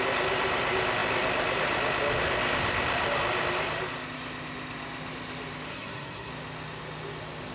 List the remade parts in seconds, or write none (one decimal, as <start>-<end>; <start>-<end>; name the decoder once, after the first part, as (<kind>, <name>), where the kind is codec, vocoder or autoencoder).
5.7-6.3 (codec, SNAC)